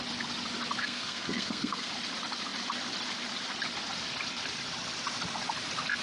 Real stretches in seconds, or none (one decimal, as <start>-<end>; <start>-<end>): 0.0-0.8; 1.9-6.0